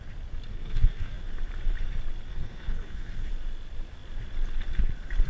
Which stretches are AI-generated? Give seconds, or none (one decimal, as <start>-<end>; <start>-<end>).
0.5-1.2; 2.3-3.3